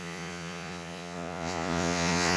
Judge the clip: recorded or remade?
remade